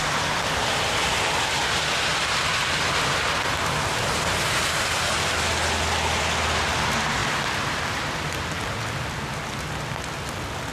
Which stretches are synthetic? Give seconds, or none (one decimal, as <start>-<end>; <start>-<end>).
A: none